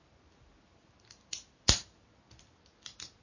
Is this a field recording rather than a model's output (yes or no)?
yes